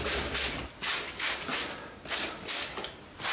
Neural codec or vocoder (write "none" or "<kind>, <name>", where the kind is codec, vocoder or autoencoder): none